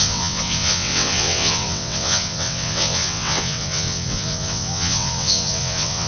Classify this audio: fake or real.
fake